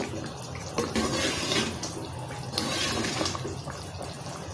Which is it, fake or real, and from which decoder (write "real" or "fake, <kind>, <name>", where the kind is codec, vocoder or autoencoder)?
real